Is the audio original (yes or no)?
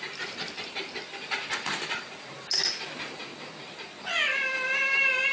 yes